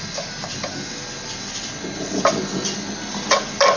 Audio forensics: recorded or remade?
recorded